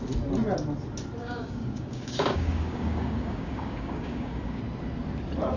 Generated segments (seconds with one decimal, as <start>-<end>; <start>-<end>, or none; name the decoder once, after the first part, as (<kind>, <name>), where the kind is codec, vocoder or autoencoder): 1.2-4.6 (codec, DAC)